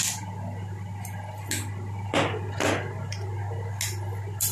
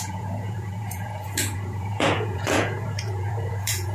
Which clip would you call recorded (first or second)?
first